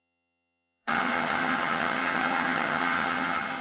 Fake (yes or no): yes